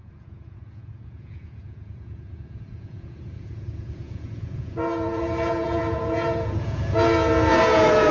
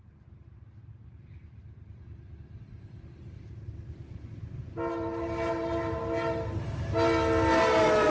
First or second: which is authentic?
second